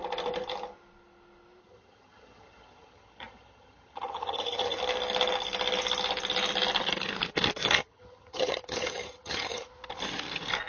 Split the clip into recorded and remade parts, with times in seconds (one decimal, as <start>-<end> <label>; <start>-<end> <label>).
0.0-1.6 recorded; 1.6-4.8 remade; 4.8-7.8 recorded; 7.8-9.7 remade; 9.7-10.7 recorded

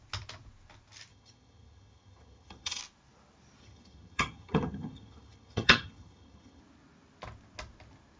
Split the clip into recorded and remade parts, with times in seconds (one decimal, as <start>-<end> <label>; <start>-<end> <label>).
0.0-1.1 recorded; 1.1-2.8 remade; 2.8-3.6 recorded; 3.6-6.6 remade; 6.6-8.2 recorded